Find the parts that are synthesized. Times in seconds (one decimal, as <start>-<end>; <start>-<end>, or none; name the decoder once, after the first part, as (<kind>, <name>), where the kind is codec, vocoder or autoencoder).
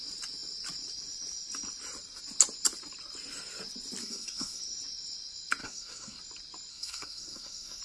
4.0-4.6 (codec, SNAC); 5.6-6.2; 6.7-7.8